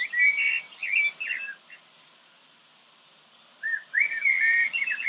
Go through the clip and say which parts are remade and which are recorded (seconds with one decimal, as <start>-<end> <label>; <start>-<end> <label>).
0.0-5.1 recorded